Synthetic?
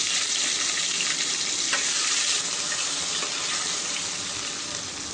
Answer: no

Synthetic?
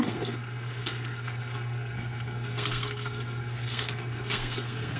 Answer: yes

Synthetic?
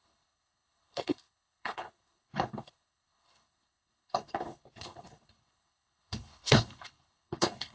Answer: yes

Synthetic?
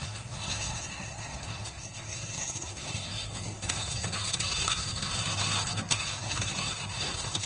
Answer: yes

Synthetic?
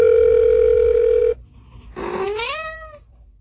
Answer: no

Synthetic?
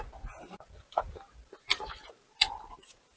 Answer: no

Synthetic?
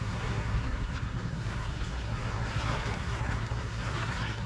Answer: yes